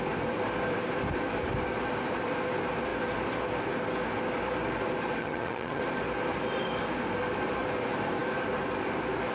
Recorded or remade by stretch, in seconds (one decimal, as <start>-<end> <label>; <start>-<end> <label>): 0.0-5.2 recorded; 5.2-5.8 remade; 5.8-9.3 recorded